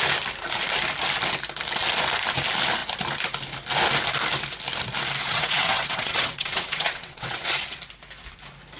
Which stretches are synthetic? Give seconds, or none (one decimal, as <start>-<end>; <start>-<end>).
5.2-7.8